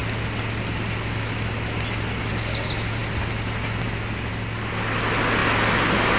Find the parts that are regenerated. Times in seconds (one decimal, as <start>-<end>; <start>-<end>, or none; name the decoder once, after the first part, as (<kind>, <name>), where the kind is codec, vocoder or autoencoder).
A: none